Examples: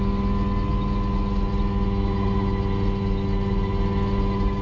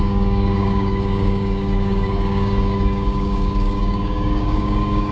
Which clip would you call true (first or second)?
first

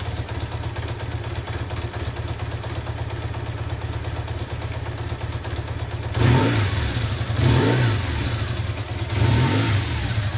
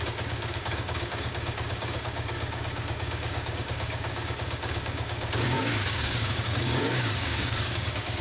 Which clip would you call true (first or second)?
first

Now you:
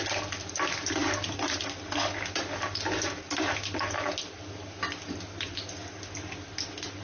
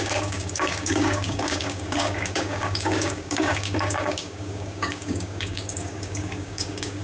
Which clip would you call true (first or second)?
first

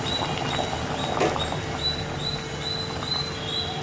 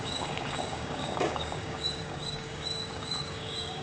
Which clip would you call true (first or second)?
first